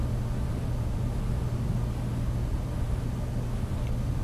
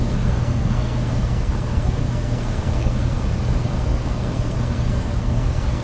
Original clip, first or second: first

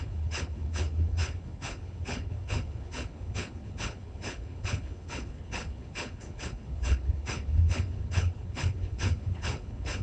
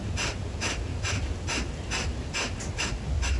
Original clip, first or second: second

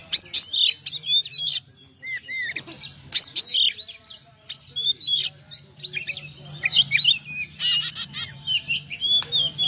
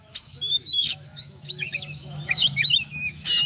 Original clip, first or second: first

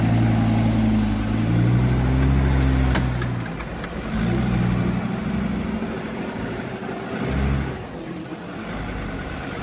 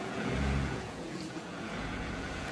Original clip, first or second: first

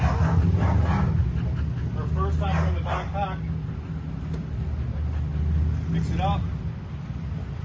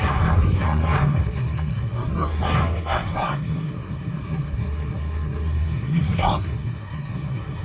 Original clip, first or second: first